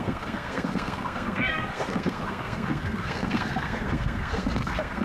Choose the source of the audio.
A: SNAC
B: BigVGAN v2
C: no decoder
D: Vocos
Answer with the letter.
A